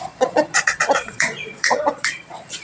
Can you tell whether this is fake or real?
fake